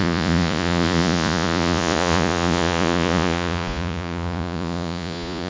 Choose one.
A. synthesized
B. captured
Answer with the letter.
A